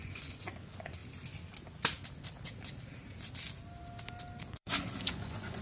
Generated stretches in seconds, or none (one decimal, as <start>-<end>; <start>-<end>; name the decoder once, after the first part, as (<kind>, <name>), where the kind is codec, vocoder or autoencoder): 0.0-1.0 (vocoder, Vocos); 4.4-5.6